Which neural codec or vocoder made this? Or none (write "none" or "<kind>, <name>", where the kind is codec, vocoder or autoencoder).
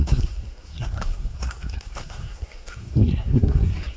codec, SNAC